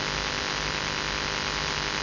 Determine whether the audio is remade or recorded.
recorded